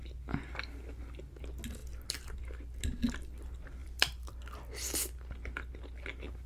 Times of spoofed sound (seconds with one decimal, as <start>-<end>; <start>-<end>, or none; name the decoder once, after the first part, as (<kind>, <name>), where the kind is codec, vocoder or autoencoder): 1.8-2.6 (vocoder, BigVGAN v2); 3.8-4.3